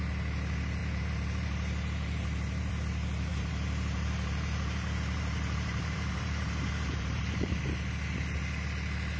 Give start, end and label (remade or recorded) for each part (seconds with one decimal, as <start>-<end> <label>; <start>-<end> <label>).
0.0-0.8 recorded; 0.8-2.7 remade; 2.7-3.3 recorded; 3.3-7.5 remade; 7.5-9.2 recorded